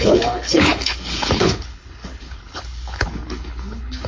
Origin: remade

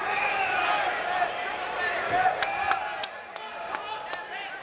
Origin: recorded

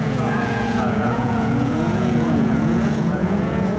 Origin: remade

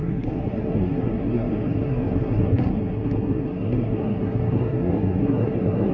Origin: remade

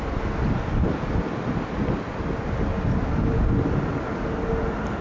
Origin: recorded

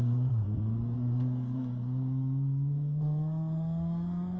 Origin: remade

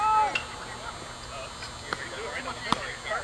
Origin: recorded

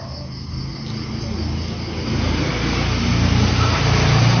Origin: recorded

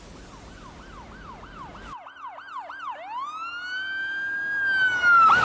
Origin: recorded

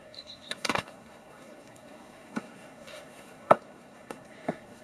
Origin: remade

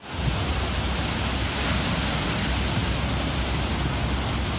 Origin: recorded